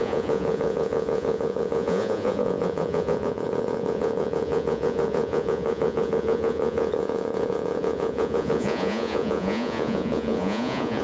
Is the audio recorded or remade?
remade